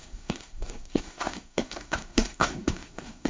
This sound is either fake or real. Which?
fake